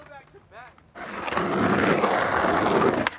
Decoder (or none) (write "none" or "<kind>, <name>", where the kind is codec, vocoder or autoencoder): none